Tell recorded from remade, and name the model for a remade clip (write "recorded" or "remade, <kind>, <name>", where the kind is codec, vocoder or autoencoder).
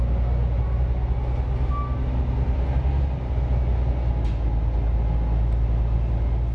recorded